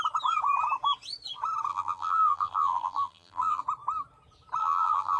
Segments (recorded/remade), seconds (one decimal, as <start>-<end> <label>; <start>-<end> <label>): 0.0-1.7 recorded; 1.7-3.6 remade; 3.6-4.6 recorded; 4.6-5.2 remade